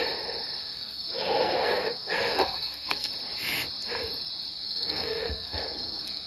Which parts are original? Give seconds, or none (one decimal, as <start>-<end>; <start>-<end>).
0.0-0.6; 3.1-4.5